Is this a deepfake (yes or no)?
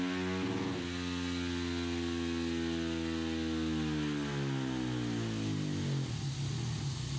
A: no